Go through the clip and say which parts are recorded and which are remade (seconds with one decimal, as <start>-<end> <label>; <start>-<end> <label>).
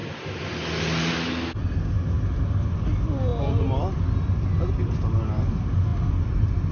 0.0-6.7 recorded